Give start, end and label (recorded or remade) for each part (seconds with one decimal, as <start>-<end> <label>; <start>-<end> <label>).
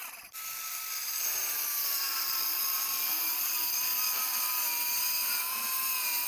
0.0-3.8 remade; 3.8-4.3 recorded; 4.3-5.0 remade; 5.0-6.3 recorded